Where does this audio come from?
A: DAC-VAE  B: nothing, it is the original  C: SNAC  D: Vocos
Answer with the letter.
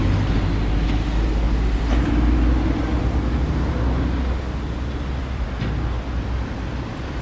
B